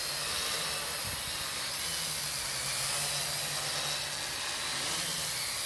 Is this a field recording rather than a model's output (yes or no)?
yes